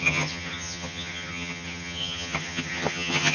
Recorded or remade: remade